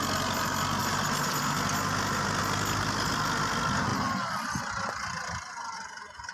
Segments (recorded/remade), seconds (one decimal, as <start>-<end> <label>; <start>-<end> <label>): 0.0-6.3 recorded

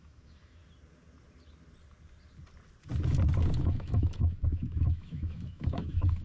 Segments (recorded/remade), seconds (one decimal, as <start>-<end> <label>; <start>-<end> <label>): 0.0-0.6 remade; 0.6-3.6 recorded; 3.6-6.2 remade

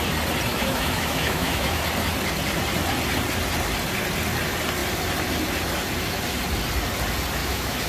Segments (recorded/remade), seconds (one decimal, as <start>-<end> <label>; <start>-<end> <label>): 0.0-0.5 recorded; 0.5-1.8 remade; 1.8-7.4 recorded; 7.4-7.9 remade

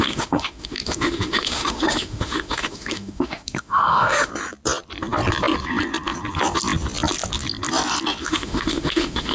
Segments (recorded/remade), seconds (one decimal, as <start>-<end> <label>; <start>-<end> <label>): 0.0-4.3 remade; 4.3-8.2 recorded; 8.2-9.3 remade

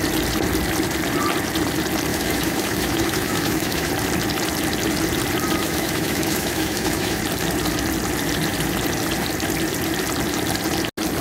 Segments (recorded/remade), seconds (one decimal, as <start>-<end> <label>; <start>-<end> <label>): 0.0-2.1 recorded; 2.1-3.9 remade; 3.9-5.6 recorded; 5.6-7.2 remade; 7.2-11.2 recorded

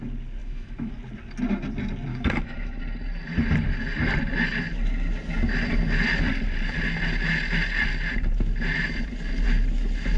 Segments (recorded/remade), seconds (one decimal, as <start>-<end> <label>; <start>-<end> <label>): 0.0-0.4 recorded; 0.4-0.9 remade; 0.9-2.1 recorded; 2.1-2.8 remade; 2.8-10.2 recorded